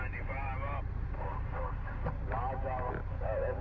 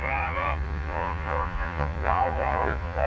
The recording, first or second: first